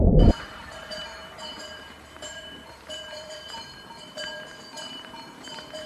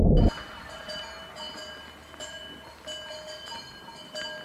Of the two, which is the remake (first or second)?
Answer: first